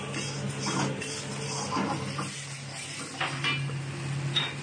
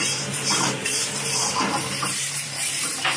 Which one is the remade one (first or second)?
second